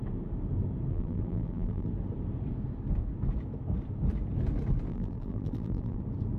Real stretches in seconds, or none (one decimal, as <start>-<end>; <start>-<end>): 0.0-0.9; 1.9-4.9; 6.0-6.4